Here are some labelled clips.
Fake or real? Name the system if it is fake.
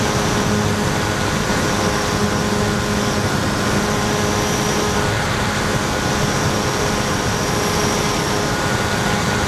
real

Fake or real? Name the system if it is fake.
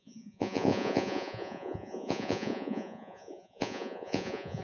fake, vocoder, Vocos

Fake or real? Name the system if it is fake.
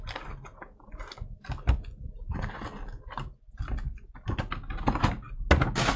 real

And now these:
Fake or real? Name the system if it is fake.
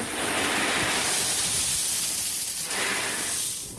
real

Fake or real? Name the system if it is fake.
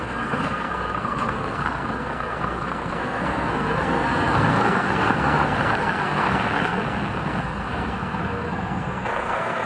fake, codec, SNAC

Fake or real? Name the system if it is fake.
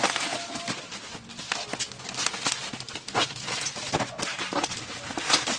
real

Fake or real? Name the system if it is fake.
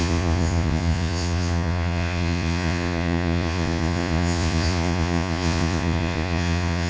fake, vocoder, Vocos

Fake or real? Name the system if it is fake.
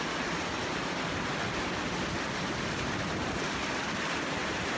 real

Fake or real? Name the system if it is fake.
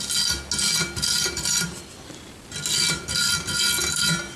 real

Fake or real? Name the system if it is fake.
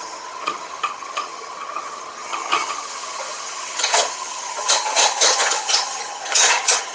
fake, vocoder, HiFi-GAN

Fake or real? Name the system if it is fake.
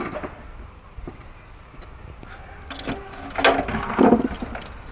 real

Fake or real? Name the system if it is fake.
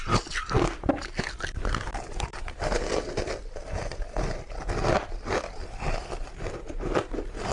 real